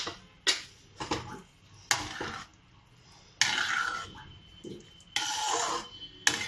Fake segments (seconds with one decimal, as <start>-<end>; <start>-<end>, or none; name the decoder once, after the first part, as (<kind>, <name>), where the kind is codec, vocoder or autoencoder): none